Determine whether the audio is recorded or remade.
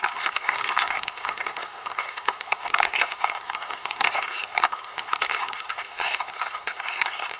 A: remade